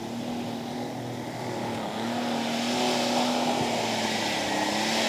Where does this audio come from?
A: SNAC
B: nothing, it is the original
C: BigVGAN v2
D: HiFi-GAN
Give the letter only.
B